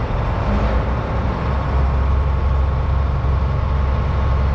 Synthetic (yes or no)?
no